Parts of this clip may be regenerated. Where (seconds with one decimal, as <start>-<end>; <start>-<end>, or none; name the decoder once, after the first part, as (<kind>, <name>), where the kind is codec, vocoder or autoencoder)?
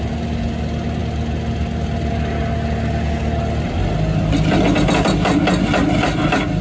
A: none